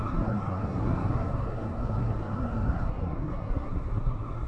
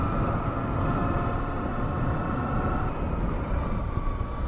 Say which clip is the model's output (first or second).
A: first